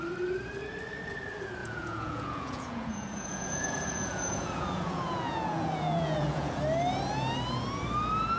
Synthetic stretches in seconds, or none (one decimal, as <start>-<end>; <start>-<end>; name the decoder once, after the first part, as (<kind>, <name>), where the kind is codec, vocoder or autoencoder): 1.6-6.6 (vocoder, Vocos)